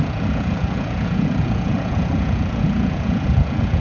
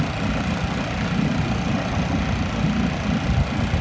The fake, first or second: first